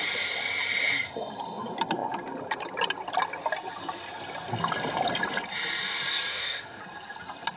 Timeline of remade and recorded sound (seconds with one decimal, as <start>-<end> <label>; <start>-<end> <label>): 0.0-6.3 recorded; 6.3-6.8 remade; 6.8-7.6 recorded